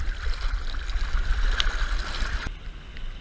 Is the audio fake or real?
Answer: real